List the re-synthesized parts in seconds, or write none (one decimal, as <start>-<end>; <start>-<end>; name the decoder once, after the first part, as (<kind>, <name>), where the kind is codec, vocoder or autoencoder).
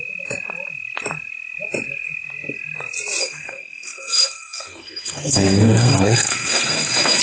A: 3.2-7.2 (codec, SNAC)